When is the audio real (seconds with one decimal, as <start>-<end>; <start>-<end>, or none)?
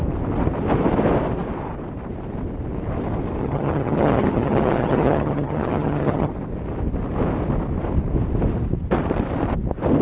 0.0-3.4; 6.3-10.0